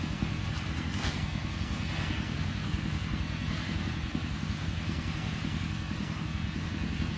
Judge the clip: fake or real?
fake